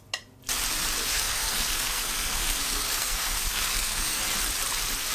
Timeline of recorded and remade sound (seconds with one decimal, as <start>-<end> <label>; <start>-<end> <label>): 0.0-1.1 recorded; 1.1-4.2 remade; 4.2-5.1 recorded